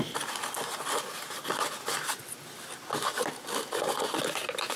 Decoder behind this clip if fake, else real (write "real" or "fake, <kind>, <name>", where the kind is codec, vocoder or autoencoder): real